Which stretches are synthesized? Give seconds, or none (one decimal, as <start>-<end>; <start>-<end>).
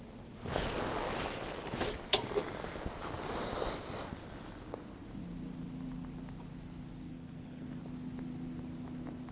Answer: 7.1-7.8